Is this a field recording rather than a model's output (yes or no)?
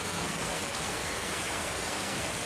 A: no